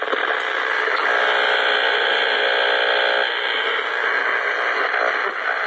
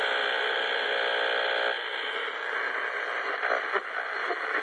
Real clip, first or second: first